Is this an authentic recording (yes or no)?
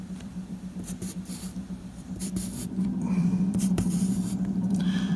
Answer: no